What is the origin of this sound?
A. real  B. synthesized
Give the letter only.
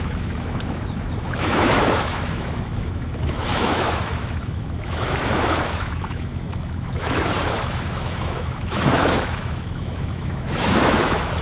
B